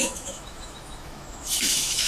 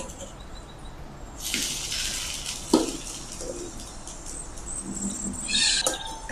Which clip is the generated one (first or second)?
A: first